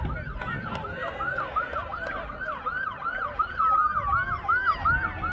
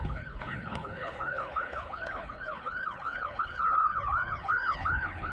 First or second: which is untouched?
first